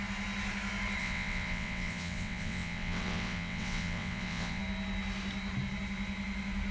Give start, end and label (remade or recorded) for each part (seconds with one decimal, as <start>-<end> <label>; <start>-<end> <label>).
0.0-1.0 recorded; 1.0-4.6 remade; 4.6-6.7 recorded